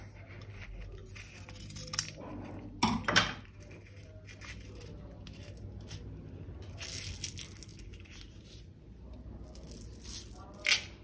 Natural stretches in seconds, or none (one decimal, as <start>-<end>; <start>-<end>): 0.0-11.0